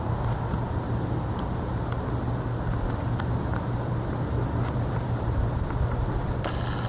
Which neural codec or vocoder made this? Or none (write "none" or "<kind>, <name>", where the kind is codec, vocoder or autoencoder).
none